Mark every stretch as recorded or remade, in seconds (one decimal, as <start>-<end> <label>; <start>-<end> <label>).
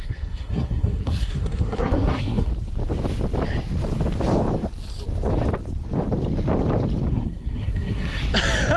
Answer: 0.0-2.5 remade; 2.5-7.1 recorded; 7.1-8.2 remade; 8.2-8.8 recorded